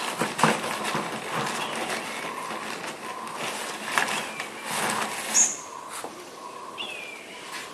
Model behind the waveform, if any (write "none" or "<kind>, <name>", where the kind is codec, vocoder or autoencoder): none